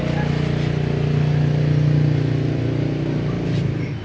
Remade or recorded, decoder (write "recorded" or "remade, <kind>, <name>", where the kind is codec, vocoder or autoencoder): recorded